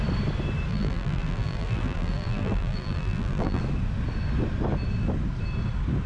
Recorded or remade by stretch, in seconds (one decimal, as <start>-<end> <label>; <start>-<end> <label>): 0.0-0.7 recorded; 0.7-3.6 remade; 3.6-6.1 recorded